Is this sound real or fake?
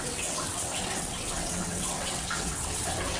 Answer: fake